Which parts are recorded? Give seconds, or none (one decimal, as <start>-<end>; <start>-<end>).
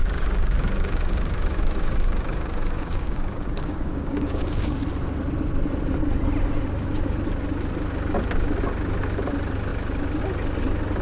4.8-11.0